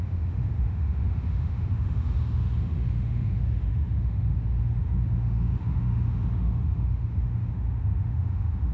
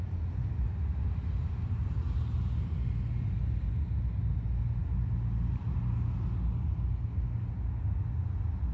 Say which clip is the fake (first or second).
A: first